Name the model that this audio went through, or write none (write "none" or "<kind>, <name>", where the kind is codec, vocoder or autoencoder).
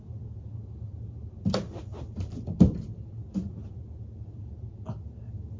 none